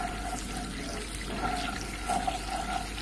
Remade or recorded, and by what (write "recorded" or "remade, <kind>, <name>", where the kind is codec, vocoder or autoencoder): recorded